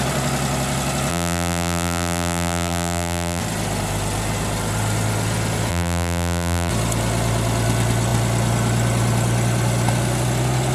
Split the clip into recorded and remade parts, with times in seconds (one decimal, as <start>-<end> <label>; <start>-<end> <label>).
0.0-1.1 recorded; 1.1-3.4 remade; 3.4-5.7 recorded; 5.7-6.7 remade; 6.7-10.7 recorded